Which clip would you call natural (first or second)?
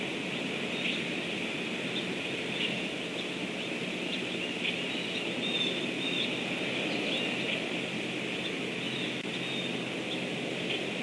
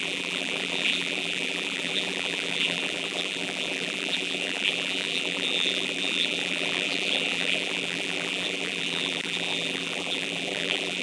first